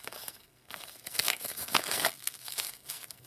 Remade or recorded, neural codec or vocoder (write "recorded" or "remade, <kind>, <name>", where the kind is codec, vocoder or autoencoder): remade, codec, SNAC